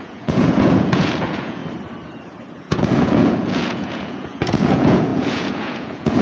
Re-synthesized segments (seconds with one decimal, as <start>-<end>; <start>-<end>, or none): 0.0-1.6; 2.5-6.2

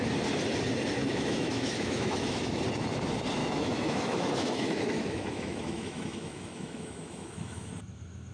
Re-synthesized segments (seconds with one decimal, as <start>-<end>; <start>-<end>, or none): 1.0-2.6; 3.4-7.7

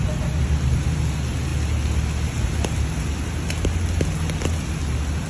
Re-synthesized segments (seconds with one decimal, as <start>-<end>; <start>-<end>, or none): none

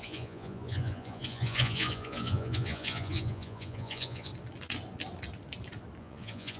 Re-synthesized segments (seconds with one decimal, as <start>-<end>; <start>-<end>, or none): 0.0-4.3; 6.0-6.6

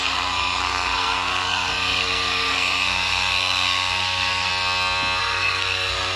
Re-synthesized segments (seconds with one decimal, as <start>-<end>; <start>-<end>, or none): 0.0-4.5; 5.2-6.2

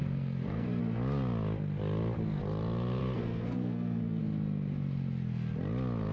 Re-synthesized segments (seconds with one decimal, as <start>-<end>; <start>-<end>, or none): 0.0-0.8; 3.0-4.2

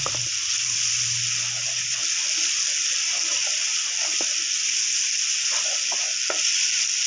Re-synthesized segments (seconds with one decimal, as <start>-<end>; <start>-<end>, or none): none

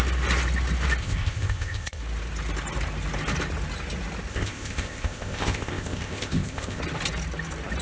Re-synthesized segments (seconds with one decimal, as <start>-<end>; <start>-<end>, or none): 1.0-2.0; 4.3-6.8